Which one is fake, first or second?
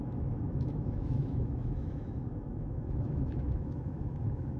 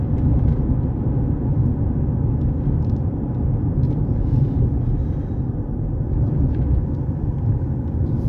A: first